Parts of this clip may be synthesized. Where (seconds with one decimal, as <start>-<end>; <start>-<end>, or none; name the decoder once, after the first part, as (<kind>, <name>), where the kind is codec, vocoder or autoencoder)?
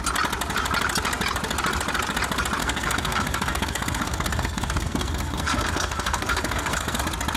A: 2.6-7.0 (codec, SNAC)